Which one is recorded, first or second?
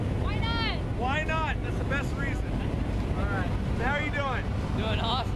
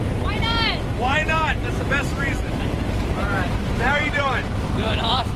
first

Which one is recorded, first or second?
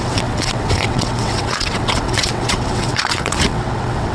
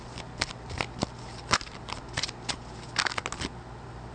second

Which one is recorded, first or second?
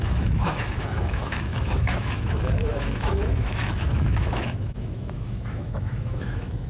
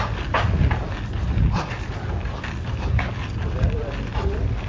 second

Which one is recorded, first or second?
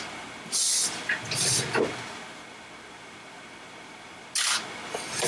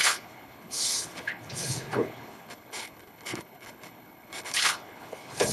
first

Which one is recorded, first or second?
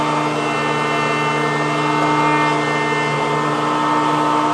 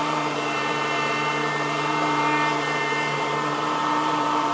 first